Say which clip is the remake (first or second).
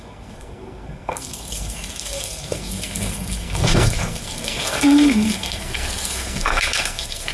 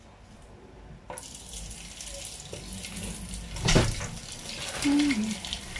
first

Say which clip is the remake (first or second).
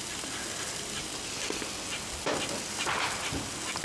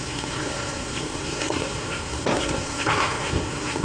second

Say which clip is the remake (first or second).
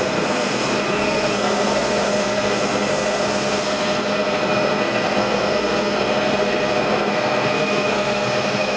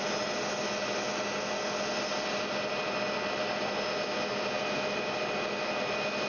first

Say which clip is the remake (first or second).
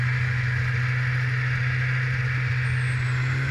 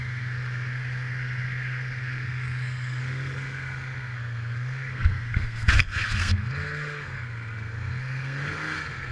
second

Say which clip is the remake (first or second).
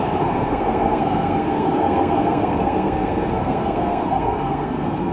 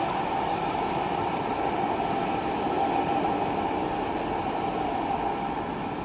first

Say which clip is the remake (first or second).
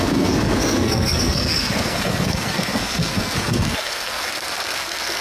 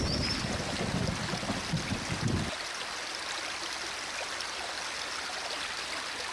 first